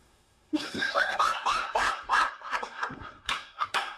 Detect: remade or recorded remade